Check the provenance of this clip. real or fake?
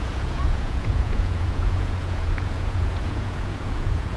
fake